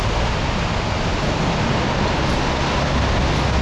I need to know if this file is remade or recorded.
recorded